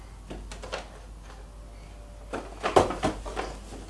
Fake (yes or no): no